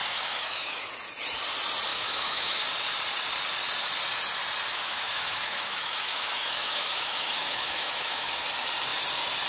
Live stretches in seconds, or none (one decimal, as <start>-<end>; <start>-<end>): 0.9-1.9; 2.6-4.7; 8.4-9.5

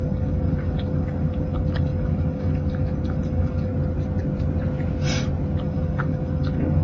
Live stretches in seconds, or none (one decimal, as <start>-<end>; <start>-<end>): 3.7-5.6

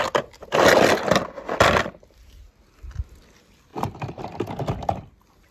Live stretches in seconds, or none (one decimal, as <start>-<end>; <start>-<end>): 0.0-3.7; 4.2-5.5

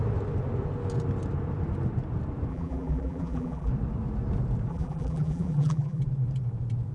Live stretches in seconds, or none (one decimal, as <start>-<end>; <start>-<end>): 0.0-2.5; 3.7-4.7; 6.0-6.9

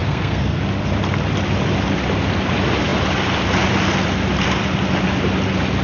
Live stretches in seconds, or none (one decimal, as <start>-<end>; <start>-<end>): 0.6-5.8

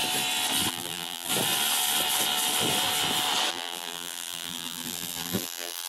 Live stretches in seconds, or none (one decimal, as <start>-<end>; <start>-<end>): 0.0-0.7; 1.3-3.5